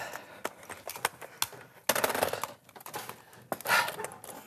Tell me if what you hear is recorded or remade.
recorded